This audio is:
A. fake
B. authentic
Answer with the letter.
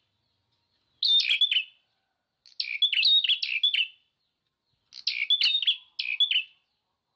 B